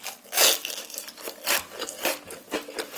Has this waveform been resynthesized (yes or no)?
no